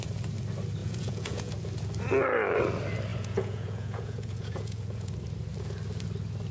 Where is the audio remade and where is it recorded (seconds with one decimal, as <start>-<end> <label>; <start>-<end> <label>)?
0.0-0.8 recorded; 0.8-1.5 remade; 1.5-3.1 recorded; 3.1-5.1 remade; 5.1-6.5 recorded